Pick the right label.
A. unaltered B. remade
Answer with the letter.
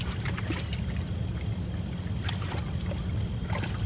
A